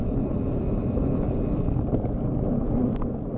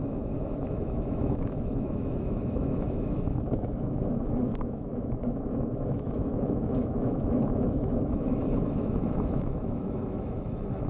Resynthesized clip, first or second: second